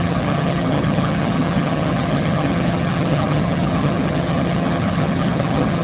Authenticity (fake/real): fake